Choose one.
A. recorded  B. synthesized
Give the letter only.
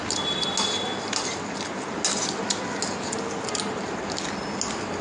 A